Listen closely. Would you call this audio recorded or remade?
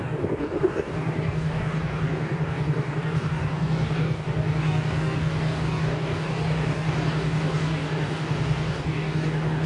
remade